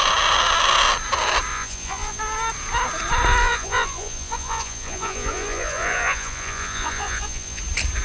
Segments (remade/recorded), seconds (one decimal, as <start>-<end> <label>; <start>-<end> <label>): 0.0-1.5 recorded; 1.5-2.2 remade; 2.2-3.4 recorded; 3.4-7.6 remade; 7.6-8.0 recorded